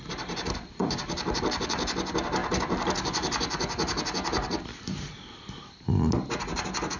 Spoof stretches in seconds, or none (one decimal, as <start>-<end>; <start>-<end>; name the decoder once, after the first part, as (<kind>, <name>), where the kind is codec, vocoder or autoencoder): 0.8-1.4 (vocoder, BigVGAN v2)